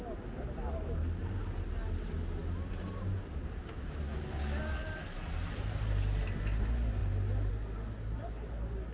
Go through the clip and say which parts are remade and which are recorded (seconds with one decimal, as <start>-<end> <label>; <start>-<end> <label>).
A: 0.0-8.9 recorded